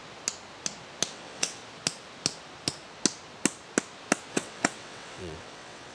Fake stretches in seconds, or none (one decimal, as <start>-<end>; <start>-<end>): 1.1-1.6; 4.3-5.9